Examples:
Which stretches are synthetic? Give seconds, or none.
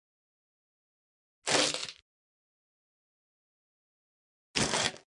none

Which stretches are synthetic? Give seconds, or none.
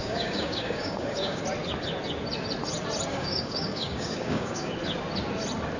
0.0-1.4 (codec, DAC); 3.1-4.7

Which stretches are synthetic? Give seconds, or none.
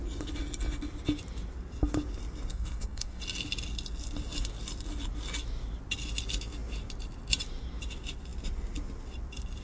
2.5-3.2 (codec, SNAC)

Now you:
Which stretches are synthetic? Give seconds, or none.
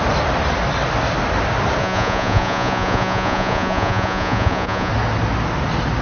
1.8-4.9 (vocoder, Vocos)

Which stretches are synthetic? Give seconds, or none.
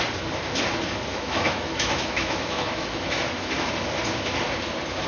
1.1-3.7 (autoencoder, DAC-VAE)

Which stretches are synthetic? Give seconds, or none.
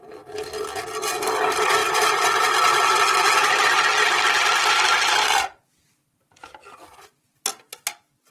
none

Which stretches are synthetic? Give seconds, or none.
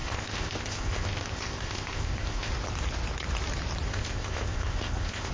0.0-2.5 (codec, ZipCodec); 3.9-5.3